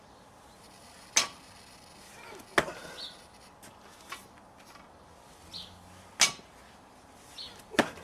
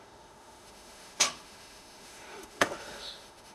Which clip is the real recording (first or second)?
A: first